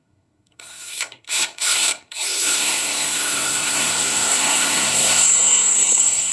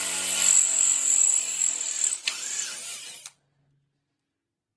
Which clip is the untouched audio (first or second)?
second